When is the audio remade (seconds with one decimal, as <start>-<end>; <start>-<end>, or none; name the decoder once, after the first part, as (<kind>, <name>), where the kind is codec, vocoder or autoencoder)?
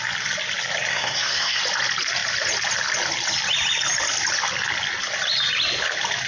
0.9-1.6 (codec, SNAC)